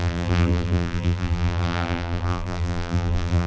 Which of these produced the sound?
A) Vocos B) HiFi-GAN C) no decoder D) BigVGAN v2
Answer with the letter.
D